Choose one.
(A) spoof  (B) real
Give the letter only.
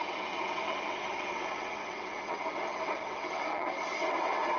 A